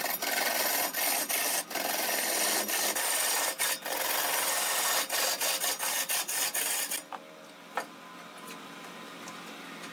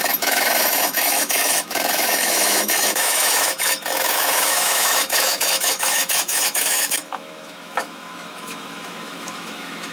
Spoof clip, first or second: second